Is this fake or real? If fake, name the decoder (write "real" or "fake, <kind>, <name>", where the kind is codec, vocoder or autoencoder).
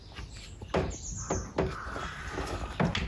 real